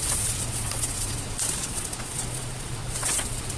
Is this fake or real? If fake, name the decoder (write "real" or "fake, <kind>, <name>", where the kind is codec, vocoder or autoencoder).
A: fake, vocoder, Vocos